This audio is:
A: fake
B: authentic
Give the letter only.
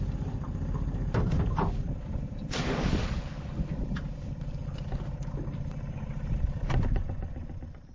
B